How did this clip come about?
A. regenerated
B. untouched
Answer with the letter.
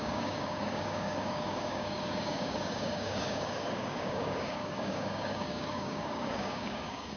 A